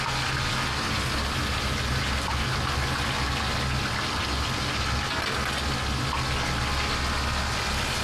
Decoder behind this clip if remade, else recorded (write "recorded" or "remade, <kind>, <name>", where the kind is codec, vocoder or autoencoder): recorded